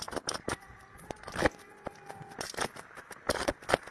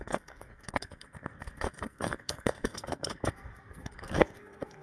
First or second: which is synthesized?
second